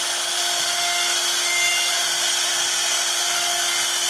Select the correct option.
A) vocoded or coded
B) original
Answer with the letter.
B